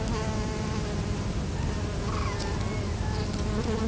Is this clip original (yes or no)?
yes